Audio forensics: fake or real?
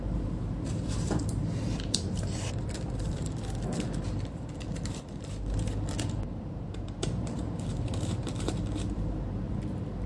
fake